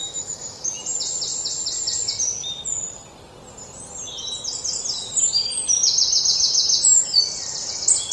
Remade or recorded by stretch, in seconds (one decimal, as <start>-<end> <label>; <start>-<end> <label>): 0.0-0.8 remade; 0.8-8.1 recorded